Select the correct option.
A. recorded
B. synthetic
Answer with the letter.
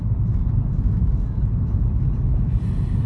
A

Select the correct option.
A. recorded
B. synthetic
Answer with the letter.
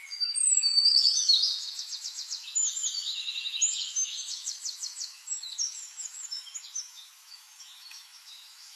B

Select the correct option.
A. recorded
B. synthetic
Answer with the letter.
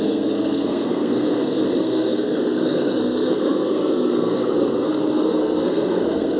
B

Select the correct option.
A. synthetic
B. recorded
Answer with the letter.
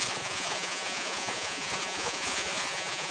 A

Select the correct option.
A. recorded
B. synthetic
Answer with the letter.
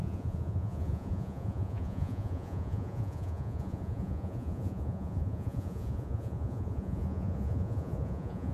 B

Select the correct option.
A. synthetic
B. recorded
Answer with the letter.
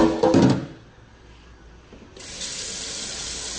B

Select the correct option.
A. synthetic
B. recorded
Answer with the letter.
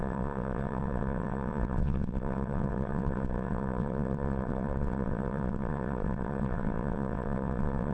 A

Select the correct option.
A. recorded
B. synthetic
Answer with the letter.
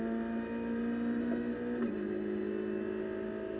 A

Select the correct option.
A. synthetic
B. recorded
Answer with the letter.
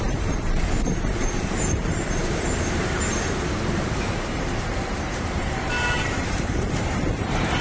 A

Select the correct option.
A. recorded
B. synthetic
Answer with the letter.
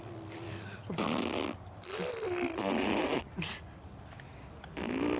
A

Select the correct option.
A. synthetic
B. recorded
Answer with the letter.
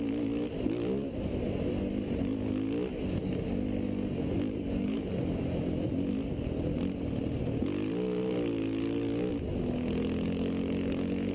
B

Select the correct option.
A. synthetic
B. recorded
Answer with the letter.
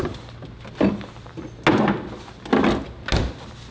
B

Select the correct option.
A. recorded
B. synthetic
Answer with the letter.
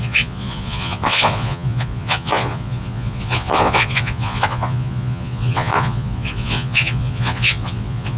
B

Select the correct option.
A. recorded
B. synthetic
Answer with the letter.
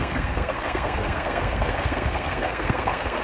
B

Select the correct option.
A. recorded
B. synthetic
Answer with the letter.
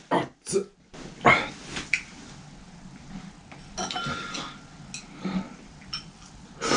A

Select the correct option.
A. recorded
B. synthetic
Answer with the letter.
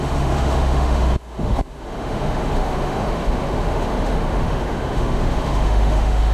B